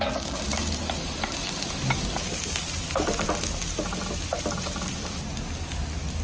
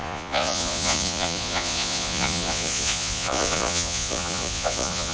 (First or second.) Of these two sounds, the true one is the first